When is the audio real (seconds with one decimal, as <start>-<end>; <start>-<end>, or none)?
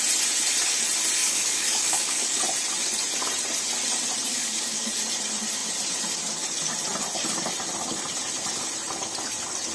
0.0-1.2; 2.4-4.3; 4.9-9.7